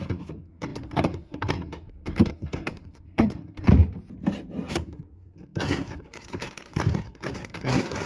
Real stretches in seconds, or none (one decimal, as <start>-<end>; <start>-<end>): 3.7-4.7